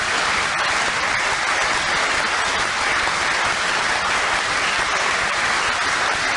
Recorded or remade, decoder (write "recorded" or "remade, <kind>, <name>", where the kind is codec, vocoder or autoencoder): recorded